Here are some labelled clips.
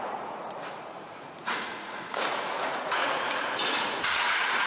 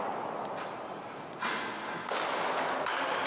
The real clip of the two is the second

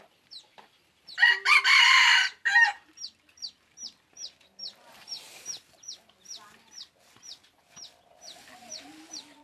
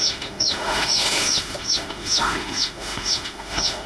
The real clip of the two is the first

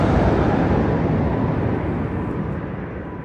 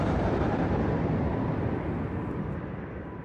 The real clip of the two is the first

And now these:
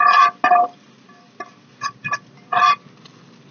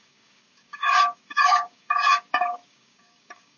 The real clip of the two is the first